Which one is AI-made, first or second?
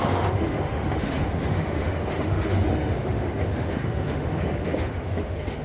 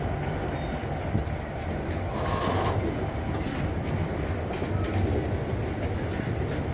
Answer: first